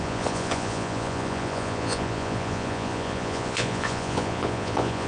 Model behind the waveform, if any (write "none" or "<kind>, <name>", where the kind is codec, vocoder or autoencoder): vocoder, Vocos